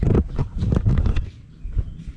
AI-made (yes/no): yes